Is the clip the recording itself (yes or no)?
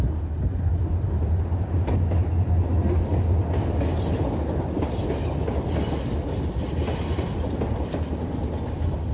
yes